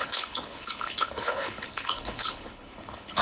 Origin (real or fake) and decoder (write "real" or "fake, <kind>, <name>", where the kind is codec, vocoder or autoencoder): fake, codec, HILCodec